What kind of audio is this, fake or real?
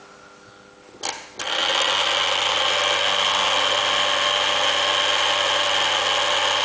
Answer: real